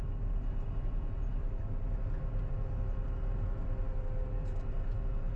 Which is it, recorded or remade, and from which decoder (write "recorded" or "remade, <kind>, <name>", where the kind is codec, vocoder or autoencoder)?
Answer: recorded